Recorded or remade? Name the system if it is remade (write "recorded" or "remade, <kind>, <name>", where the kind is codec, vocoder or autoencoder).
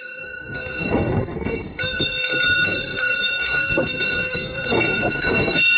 remade, codec, SNAC